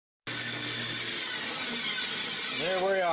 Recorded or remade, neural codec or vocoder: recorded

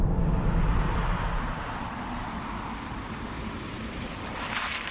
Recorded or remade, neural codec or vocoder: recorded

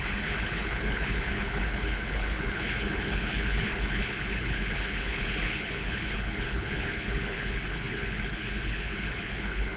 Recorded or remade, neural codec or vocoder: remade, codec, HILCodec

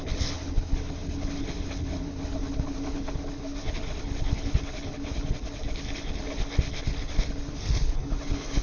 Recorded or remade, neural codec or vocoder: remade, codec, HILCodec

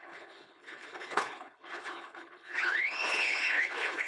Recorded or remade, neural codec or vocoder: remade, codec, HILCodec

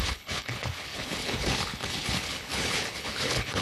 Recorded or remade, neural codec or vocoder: remade, codec, HILCodec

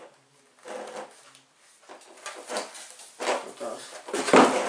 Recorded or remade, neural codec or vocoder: recorded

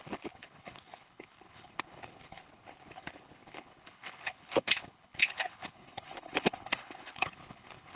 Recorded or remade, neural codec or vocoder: remade, codec, HILCodec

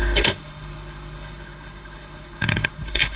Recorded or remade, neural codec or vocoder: remade, codec, HILCodec